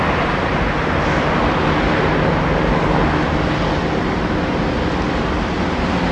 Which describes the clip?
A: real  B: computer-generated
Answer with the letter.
A